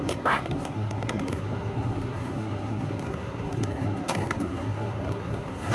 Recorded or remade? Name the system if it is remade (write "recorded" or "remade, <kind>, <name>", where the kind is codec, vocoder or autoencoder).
remade, codec, SNAC